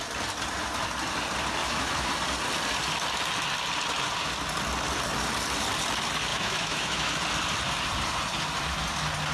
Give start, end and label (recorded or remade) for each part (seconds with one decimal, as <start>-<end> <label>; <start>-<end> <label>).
0.0-1.6 recorded; 1.6-2.1 remade; 2.1-6.3 recorded; 6.3-7.2 remade; 7.2-9.3 recorded